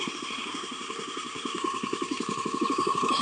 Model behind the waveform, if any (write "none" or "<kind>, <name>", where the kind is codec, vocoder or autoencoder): codec, SNAC